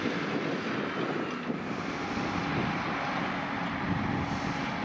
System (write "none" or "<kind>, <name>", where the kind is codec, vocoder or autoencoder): none